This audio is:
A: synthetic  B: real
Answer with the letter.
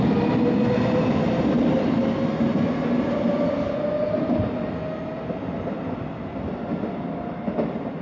B